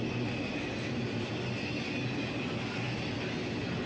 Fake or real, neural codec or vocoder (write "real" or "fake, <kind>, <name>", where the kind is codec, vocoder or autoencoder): real